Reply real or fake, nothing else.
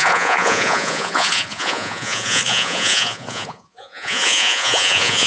fake